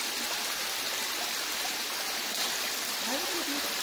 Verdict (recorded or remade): recorded